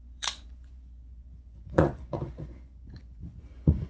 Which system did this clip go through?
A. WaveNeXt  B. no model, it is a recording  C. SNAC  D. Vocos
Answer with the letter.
D